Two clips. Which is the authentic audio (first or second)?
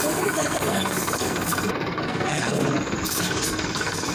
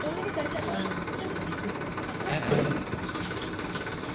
second